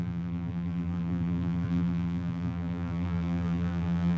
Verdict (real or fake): fake